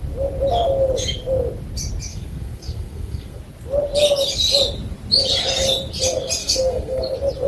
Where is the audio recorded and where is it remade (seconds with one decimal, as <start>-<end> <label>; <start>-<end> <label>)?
0.0-2.1 recorded; 2.1-3.4 remade; 3.4-6.4 recorded; 6.4-7.0 remade; 7.0-7.5 recorded